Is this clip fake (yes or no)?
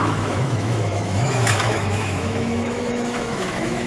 yes